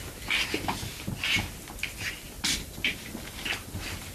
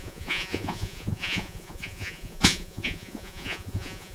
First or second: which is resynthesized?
second